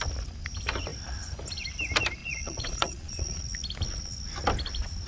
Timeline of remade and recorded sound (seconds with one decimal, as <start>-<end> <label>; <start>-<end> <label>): 0.0-2.2 recorded; 2.2-3.4 remade; 3.4-5.1 recorded